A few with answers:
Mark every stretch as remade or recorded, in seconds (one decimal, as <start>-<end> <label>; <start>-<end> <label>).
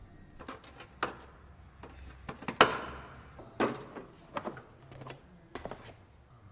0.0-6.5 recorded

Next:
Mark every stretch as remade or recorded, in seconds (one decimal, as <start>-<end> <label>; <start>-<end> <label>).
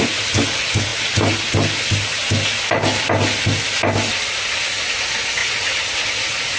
0.0-6.6 recorded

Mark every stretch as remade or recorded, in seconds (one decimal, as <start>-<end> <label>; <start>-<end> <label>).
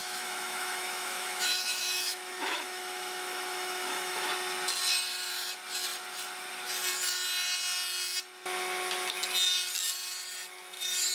0.0-4.3 remade; 4.3-11.1 recorded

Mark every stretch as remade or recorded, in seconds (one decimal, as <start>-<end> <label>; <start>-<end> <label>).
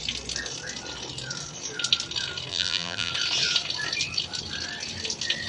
0.0-2.5 recorded; 2.5-3.1 remade; 3.1-5.5 recorded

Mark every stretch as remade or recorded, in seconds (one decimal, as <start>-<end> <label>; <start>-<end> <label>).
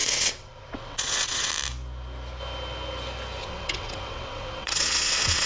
0.0-1.5 remade; 1.5-3.4 recorded; 3.4-5.5 remade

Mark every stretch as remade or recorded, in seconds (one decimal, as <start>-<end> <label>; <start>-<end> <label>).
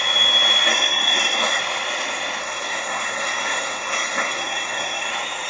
0.0-0.7 recorded; 0.7-1.6 remade; 1.6-2.4 recorded; 2.4-5.1 remade; 5.1-5.5 recorded